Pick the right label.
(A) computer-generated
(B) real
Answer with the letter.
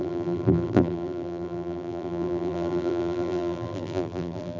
A